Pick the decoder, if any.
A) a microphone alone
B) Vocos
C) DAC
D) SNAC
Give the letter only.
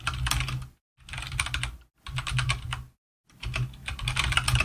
A